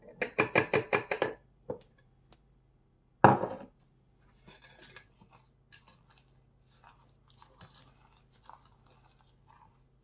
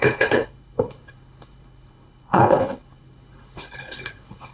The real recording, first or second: first